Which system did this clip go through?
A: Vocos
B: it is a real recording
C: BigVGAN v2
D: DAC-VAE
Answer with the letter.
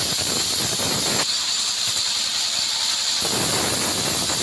B